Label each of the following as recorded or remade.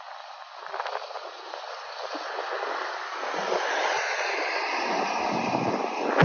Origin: recorded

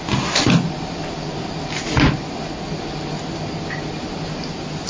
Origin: recorded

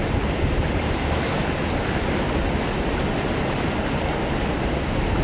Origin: recorded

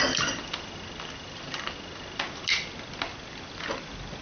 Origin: recorded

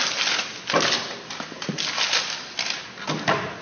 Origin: recorded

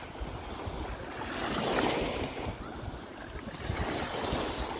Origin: recorded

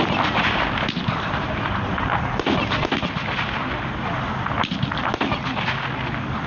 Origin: recorded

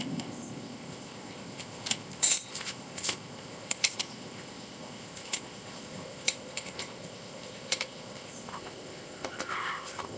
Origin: remade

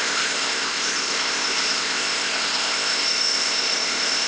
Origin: remade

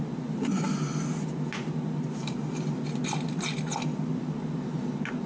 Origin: recorded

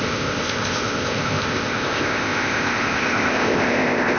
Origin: remade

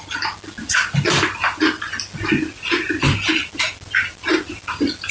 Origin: recorded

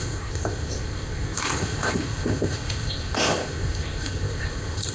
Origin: remade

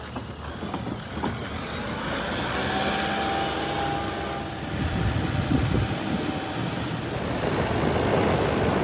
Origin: recorded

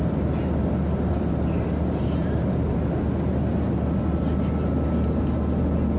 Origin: recorded